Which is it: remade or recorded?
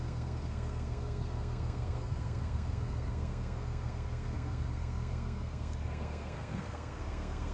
remade